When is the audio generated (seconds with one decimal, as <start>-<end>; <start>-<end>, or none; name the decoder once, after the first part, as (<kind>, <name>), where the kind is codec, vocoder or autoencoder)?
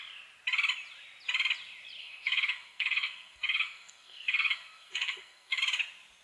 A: 2.0-5.6 (codec, SNAC)